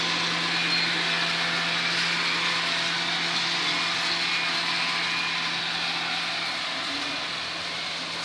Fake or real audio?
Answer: real